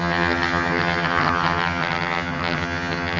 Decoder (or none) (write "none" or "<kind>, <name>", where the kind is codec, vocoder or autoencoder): vocoder, HiFi-GAN